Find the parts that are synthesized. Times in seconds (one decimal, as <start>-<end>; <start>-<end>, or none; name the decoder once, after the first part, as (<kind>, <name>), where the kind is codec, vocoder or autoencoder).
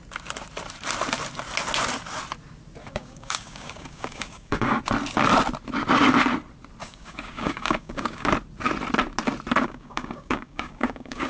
2.8-4.8 (codec, DAC); 6.8-8.3; 9.6-11.3